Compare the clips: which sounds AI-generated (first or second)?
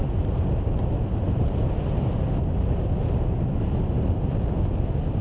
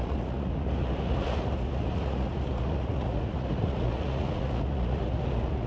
second